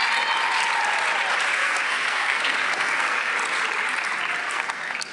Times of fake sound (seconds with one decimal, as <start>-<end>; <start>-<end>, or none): 1.5-3.3; 4.4-5.1